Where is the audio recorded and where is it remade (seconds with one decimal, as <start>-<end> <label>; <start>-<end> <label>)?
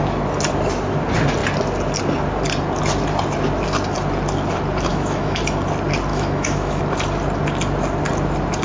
0.0-4.9 recorded; 4.9-5.4 remade; 5.4-6.1 recorded; 6.1-6.8 remade; 6.8-8.6 recorded